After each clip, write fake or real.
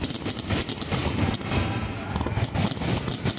real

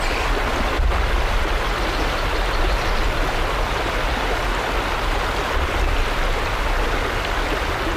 real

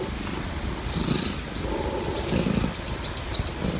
real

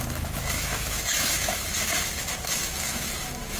fake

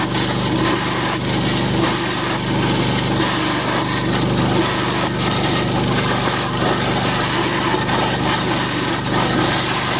real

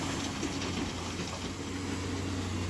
real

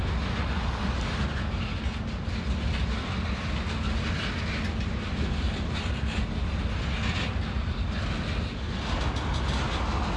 real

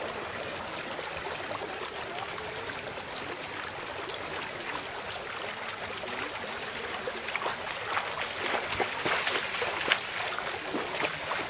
real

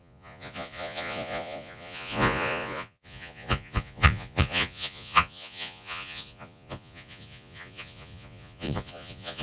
fake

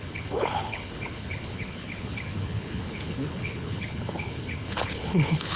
fake